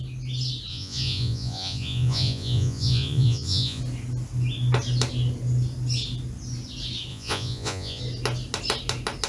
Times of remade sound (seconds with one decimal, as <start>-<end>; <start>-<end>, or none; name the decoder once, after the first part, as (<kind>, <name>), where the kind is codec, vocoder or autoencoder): 0.7-3.8 (vocoder, Vocos); 7.1-8.0